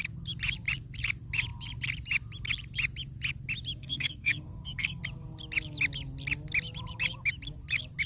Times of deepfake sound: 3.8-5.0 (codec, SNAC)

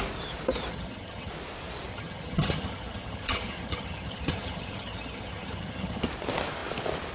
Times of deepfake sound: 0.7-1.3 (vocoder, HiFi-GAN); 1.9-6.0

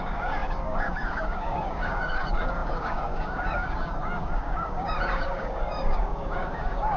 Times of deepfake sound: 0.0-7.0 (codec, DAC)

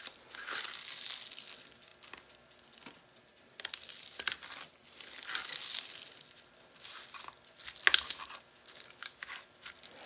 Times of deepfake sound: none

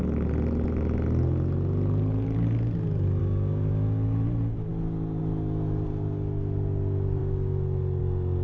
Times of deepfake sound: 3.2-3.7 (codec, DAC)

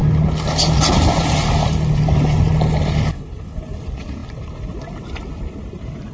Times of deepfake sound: 3.1-3.6 (codec, HILCodec)

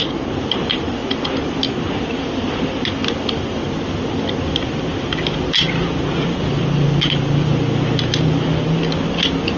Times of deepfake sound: none

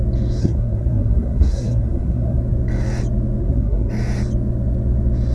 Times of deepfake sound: 0.4-2.4 (codec, SNAC); 3.4-3.9